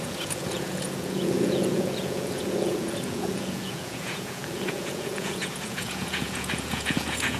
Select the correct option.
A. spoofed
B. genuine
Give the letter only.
A